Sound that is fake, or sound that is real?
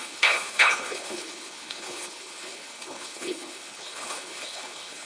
fake